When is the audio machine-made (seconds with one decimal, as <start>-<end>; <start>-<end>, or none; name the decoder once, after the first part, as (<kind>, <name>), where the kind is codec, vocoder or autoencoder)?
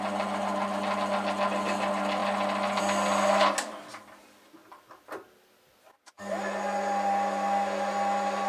none